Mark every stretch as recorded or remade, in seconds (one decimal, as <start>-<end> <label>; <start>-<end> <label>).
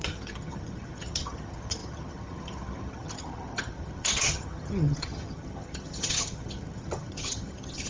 0.0-7.9 remade